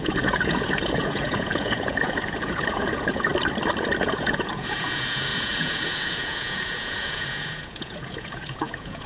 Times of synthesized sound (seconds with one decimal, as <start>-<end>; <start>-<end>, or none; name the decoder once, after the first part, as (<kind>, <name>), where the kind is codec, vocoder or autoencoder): 0.0-3.3 (vocoder, Vocos); 4.0-9.1